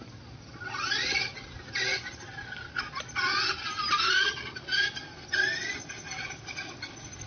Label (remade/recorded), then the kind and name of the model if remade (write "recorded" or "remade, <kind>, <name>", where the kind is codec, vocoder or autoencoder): recorded